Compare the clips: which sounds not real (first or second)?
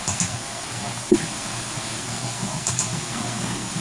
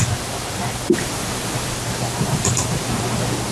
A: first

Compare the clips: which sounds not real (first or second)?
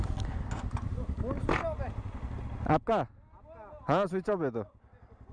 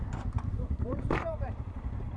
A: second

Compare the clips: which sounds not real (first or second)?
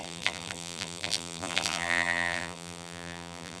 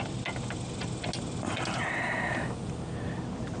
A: first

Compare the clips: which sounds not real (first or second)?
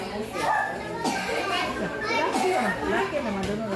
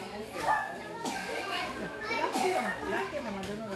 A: second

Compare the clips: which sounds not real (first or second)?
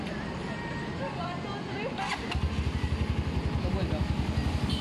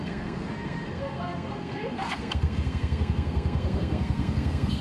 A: second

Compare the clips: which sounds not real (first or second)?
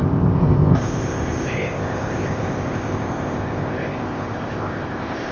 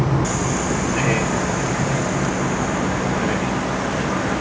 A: first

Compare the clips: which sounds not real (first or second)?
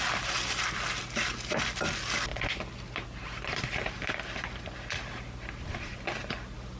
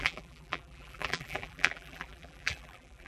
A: second